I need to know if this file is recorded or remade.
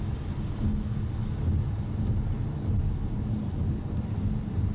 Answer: recorded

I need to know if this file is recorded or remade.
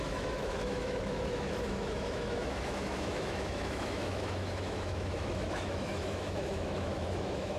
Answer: remade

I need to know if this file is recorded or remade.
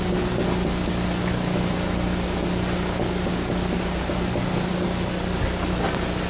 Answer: recorded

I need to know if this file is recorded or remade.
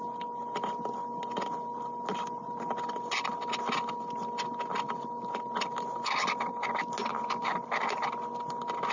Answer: recorded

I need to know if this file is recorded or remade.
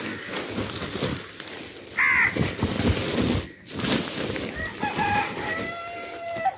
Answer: recorded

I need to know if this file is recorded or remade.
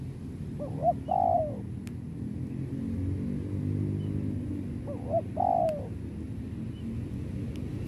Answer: recorded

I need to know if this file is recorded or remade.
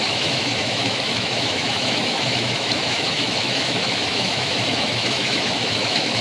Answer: remade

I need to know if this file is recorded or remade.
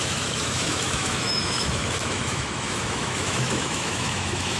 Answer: remade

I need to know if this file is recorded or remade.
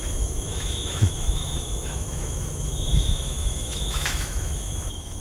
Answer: remade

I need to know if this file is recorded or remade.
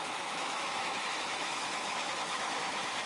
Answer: remade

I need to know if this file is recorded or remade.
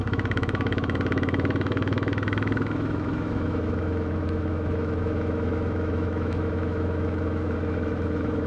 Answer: remade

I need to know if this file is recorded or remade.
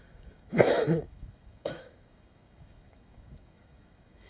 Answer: remade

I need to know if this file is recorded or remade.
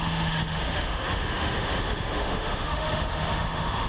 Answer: remade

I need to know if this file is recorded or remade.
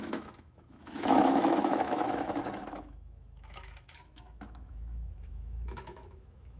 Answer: remade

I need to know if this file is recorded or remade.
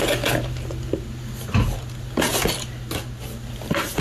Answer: recorded